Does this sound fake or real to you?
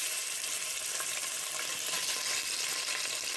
real